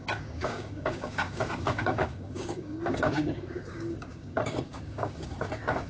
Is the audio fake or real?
fake